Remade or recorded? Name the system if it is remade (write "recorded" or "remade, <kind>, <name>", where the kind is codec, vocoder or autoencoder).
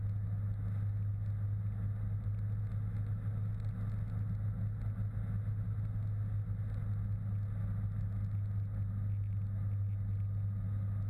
recorded